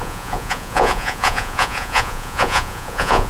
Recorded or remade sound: remade